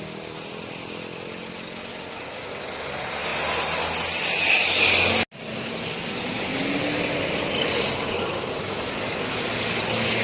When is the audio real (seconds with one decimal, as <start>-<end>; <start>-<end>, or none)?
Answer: 0.0-10.2